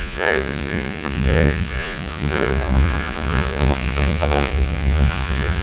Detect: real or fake fake